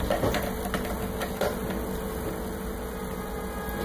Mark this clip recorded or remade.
recorded